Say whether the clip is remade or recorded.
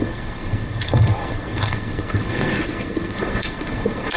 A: remade